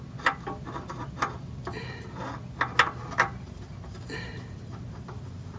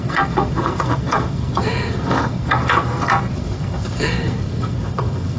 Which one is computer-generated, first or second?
second